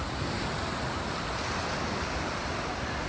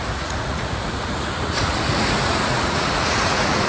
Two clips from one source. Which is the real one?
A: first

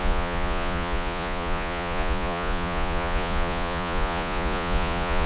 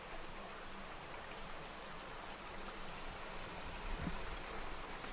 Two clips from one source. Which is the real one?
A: second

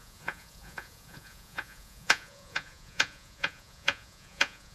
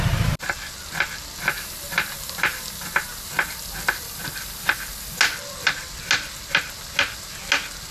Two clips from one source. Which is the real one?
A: second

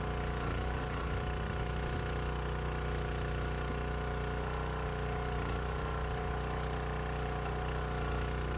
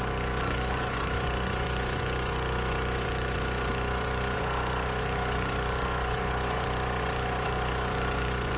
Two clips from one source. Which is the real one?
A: first